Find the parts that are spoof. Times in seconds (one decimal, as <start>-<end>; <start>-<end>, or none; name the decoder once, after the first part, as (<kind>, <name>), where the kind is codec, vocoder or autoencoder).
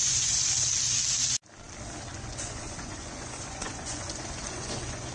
0.0-0.5 (vocoder, Vocos); 2.1-5.1